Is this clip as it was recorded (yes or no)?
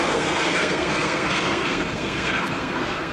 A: no